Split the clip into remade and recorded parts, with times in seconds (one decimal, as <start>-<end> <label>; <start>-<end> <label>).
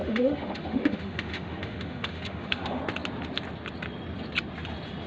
0.0-2.8 remade; 2.8-5.1 recorded